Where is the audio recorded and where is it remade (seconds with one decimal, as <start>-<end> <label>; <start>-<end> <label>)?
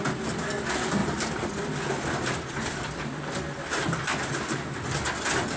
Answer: 0.0-5.6 recorded